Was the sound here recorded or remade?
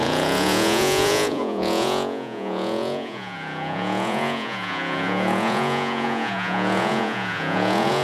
remade